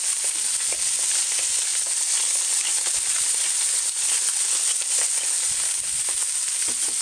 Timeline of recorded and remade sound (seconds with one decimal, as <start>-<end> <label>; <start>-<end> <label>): 0.0-7.0 recorded